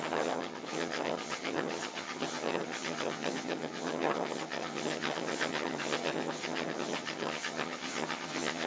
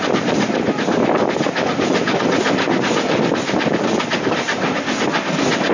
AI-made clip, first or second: first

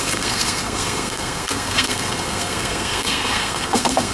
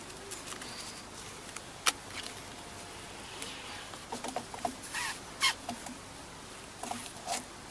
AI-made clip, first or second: first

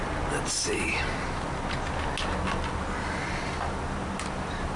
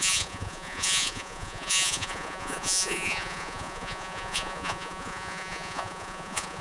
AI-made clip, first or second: second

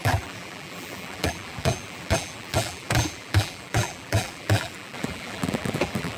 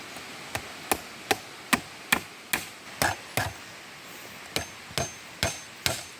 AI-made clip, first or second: first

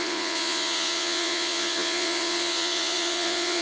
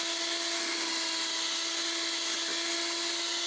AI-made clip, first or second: first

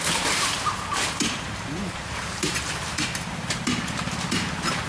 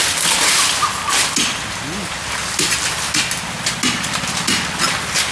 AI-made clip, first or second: first